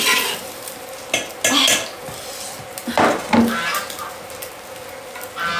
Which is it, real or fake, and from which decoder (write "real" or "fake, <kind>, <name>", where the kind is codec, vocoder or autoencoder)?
real